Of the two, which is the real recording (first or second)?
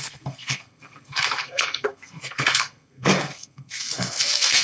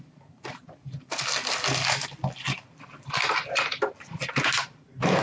second